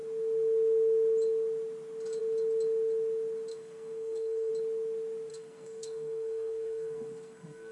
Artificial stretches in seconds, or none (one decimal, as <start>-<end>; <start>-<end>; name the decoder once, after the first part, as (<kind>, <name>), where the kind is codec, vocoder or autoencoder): 3.5-4.5 (codec, SNAC); 5.3-7.7